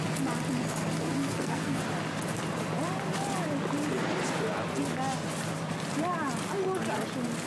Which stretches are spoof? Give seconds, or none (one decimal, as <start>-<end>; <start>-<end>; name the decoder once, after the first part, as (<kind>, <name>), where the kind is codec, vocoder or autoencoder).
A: 1.2-1.8 (codec, SNAC)